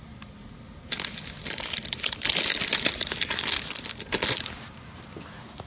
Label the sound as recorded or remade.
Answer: recorded